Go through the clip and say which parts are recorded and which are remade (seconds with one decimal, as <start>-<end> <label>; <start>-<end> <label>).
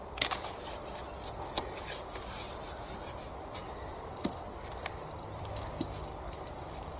0.0-3.6 recorded; 3.6-5.7 remade; 5.7-7.0 recorded